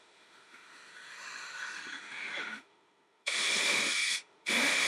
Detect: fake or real fake